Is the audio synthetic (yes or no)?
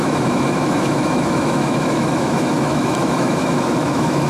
yes